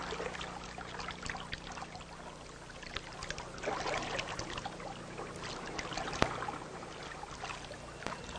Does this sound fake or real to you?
real